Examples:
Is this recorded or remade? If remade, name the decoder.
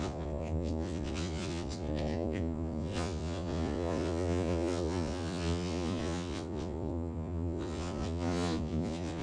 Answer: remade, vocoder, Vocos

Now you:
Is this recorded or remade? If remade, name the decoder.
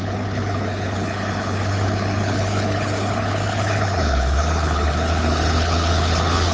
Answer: remade, codec, HILCodec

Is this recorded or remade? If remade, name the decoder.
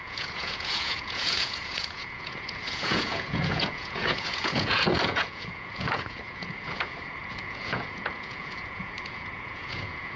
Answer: remade, vocoder, Vocos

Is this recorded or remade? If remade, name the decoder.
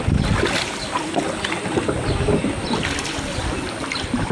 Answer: recorded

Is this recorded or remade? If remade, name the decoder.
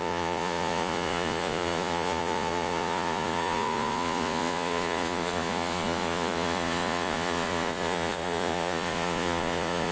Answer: remade, vocoder, Vocos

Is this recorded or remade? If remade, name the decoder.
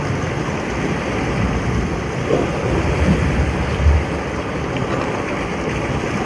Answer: recorded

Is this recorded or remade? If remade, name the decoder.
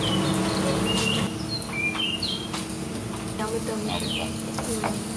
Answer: recorded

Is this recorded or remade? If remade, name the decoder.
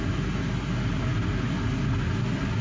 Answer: recorded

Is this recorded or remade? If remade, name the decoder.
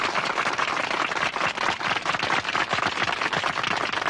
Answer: recorded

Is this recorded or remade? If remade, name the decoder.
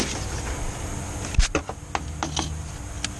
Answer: recorded